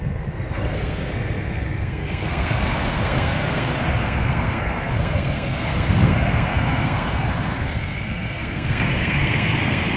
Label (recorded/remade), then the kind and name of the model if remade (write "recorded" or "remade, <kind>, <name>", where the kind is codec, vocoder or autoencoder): remade, codec, SNAC